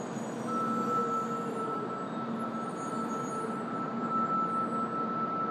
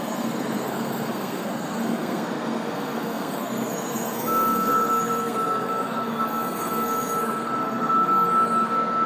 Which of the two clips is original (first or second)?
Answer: first